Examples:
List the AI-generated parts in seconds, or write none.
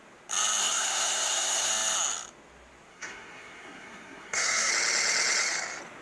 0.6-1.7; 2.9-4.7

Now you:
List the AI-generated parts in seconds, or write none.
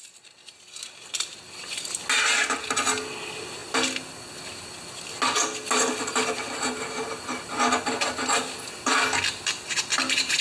none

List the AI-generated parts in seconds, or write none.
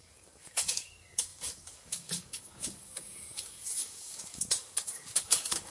0.0-5.7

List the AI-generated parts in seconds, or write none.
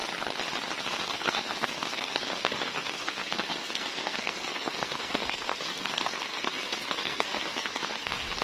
0.8-8.4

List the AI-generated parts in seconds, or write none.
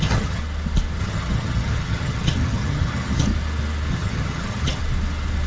0.0-0.4; 1.0-3.3; 3.9-4.8